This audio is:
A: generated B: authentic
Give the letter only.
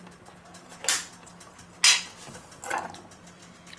B